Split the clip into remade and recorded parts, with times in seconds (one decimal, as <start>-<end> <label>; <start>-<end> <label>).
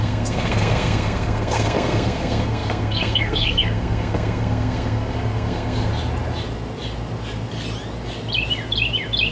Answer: 0.0-5.9 remade; 5.9-9.3 recorded